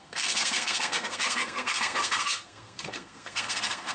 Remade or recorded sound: remade